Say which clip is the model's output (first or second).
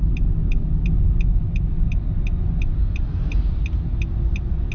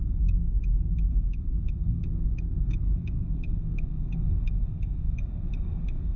second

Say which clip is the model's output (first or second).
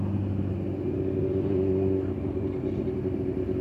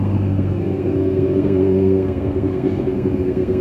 second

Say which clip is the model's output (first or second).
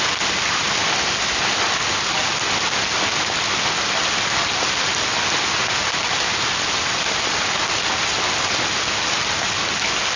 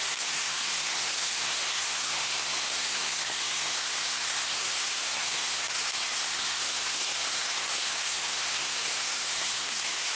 second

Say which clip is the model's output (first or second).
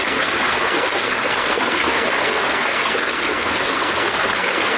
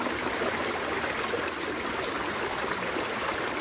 first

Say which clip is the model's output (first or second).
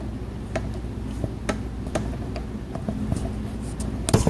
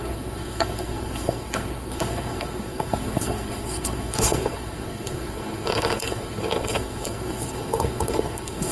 second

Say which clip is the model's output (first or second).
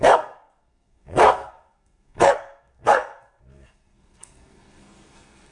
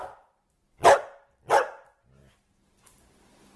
first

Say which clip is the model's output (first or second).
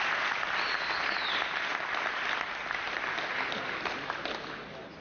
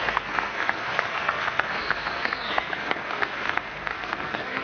second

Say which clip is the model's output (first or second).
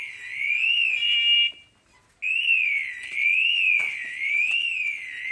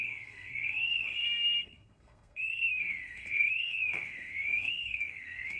second